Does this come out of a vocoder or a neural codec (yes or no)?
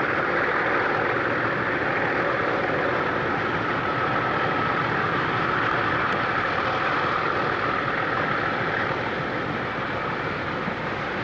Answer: no